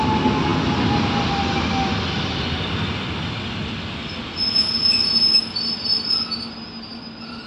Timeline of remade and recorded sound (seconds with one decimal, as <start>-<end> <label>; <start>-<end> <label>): 0.0-7.5 recorded

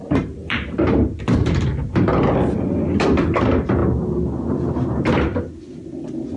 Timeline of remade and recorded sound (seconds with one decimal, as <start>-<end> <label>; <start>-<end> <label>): 0.0-2.1 remade; 2.1-3.2 recorded; 3.2-3.8 remade; 3.8-4.5 recorded; 4.5-5.3 remade; 5.3-6.4 recorded

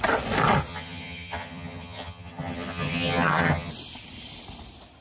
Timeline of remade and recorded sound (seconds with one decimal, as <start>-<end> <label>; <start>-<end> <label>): 0.0-0.7 recorded; 0.7-3.7 remade; 3.7-5.0 recorded

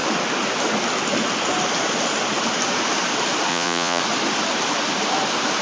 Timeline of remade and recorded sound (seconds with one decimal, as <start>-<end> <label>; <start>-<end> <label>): 0.0-3.5 recorded; 3.5-4.0 remade; 4.0-5.6 recorded

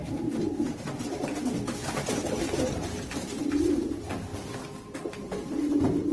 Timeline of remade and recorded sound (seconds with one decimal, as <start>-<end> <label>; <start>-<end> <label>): 0.0-4.3 remade; 4.3-5.1 recorded; 5.1-6.1 remade

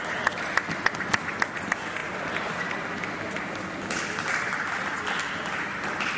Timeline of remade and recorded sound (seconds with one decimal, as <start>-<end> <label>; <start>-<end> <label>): 0.0-6.2 recorded

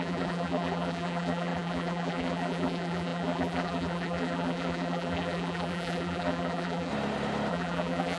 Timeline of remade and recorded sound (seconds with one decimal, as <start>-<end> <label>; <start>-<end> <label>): 0.0-6.9 remade; 6.9-7.5 recorded; 7.5-8.2 remade

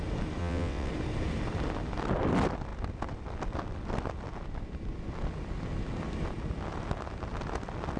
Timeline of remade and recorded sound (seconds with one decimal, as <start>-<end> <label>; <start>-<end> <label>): 0.0-0.4 recorded; 0.4-0.9 remade; 0.9-8.0 recorded